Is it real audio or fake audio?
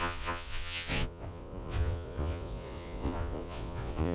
fake